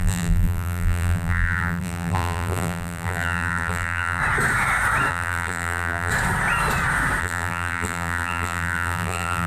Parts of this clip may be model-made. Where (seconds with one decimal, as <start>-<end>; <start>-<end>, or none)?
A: 0.0-4.2; 5.1-6.1; 7.2-9.5